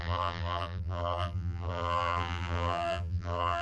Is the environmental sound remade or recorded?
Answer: remade